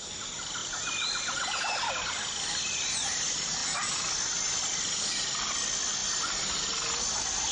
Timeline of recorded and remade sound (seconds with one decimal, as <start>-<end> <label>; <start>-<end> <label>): 0.0-7.5 recorded